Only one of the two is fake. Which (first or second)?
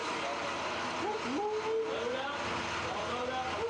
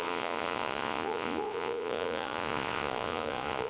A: second